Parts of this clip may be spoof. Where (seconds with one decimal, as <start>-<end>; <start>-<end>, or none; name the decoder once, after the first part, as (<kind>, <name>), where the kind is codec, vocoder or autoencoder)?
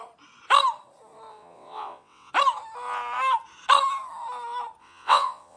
1.3-2.3 (vocoder, WaveNeXt); 4.8-5.6